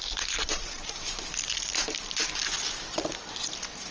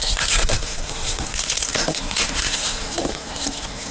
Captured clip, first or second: first